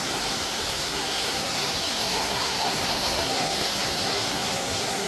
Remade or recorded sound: remade